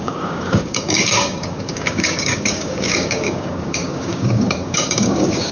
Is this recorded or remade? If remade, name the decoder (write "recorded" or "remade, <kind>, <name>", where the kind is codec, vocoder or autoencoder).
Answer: remade, codec, DAC